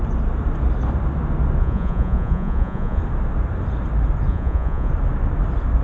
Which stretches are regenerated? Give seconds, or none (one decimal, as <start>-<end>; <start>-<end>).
1.6-3.0; 4.3-4.9